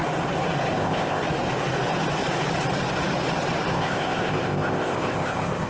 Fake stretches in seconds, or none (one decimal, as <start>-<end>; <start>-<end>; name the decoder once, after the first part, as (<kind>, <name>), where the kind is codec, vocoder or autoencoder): 0.7-1.2 (codec, ZipCodec); 3.7-5.7